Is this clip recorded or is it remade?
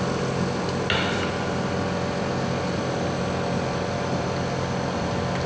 recorded